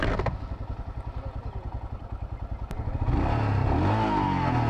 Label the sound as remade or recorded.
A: recorded